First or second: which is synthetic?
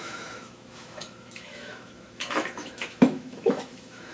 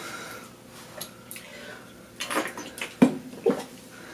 first